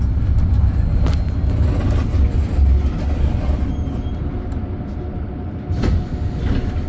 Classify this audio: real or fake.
real